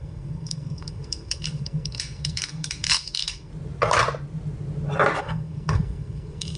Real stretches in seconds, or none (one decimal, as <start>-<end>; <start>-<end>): 3.5-5.2